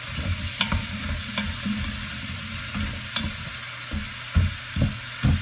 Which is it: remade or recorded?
recorded